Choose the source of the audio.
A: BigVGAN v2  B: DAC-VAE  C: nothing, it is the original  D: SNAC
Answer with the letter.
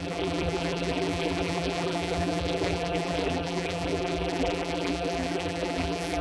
A